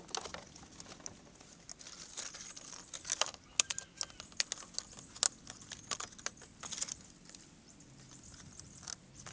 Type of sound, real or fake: real